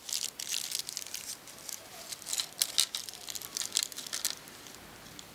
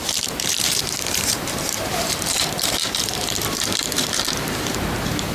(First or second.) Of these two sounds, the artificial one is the second